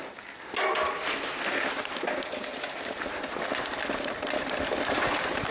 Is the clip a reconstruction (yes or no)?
no